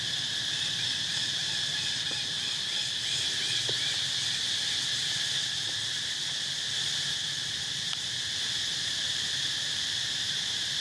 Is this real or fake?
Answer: real